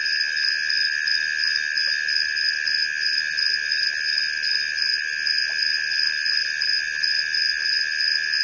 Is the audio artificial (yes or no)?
no